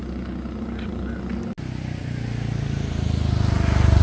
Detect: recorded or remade recorded